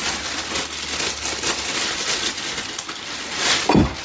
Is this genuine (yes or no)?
yes